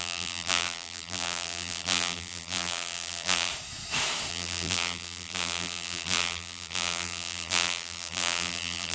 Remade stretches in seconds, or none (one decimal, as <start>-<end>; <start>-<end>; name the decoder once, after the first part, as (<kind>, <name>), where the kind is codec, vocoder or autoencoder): 0.0-3.5 (vocoder, BigVGAN v2); 4.3-8.9